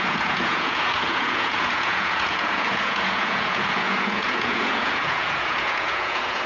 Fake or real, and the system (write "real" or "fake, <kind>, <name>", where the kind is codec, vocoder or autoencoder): fake, vocoder, Vocos